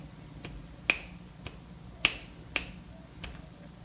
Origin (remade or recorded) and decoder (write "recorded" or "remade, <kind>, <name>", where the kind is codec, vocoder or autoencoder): recorded